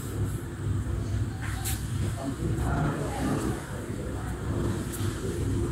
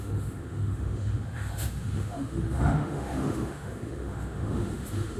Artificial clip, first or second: second